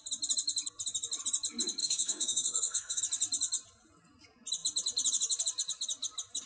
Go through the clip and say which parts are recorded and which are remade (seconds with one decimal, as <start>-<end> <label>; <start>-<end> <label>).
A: 0.0-1.8 recorded; 1.8-3.0 remade; 3.0-6.5 recorded

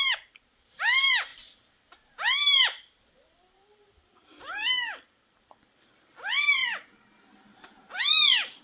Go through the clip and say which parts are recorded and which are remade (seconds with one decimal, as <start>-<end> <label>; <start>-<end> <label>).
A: 0.0-8.6 remade